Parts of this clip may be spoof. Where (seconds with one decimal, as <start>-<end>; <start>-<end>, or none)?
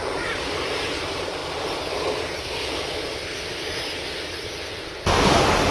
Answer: 0.0-1.4; 4.8-5.7